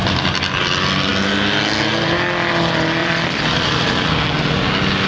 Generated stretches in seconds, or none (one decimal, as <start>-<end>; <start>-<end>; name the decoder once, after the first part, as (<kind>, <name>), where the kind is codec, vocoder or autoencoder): 3.0-4.1 (vocoder, BigVGAN v2)